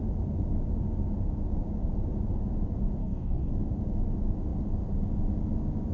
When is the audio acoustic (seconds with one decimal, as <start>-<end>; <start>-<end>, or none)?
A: 0.0-3.0; 3.5-5.9